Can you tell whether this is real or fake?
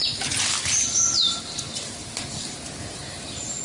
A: real